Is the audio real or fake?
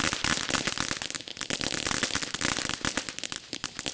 real